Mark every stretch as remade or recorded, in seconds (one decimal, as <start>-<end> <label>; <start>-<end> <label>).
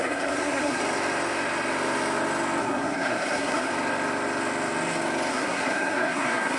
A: 0.0-0.8 remade; 0.8-2.6 recorded; 2.6-3.7 remade; 3.7-5.3 recorded; 5.3-6.6 remade